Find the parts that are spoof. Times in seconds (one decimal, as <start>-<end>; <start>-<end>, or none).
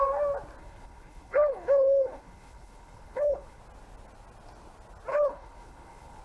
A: 0.6-3.6; 5.1-6.2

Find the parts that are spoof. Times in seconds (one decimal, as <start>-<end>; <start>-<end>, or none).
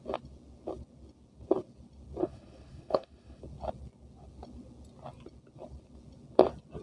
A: 2.2-3.4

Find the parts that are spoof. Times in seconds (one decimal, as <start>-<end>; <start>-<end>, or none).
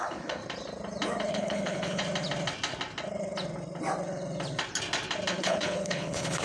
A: 0.0-0.4; 1.3-2.0; 5.4-6.4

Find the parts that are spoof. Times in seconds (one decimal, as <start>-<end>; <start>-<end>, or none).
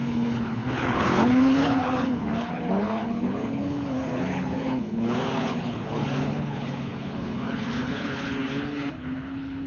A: 0.0-9.7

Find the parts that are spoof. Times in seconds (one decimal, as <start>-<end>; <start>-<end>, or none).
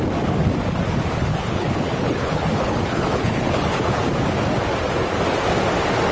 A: 1.3-4.0